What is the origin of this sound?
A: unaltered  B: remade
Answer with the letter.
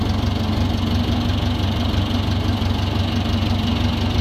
A